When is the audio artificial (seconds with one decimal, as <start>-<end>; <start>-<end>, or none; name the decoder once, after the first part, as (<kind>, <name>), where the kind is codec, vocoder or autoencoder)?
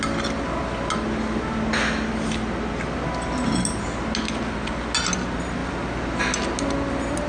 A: none